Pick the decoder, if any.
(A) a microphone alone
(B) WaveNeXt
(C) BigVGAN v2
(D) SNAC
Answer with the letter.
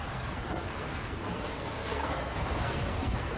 D